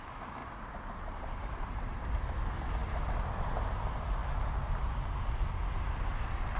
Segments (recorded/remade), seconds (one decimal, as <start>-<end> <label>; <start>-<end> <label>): 0.0-0.4 recorded; 0.4-2.1 remade; 2.1-6.6 recorded